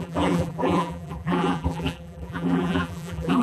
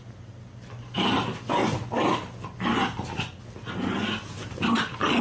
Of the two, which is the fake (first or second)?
first